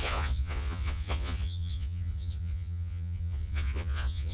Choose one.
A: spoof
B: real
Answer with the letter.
A